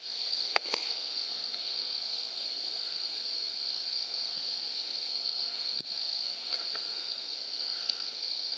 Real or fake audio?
fake